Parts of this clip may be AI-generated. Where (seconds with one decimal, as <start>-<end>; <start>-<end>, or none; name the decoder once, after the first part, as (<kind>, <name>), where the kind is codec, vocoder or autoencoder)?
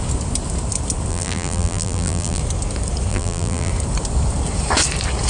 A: 1.1-2.4 (vocoder, BigVGAN v2); 3.1-3.7